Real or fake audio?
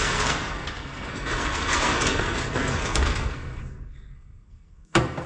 fake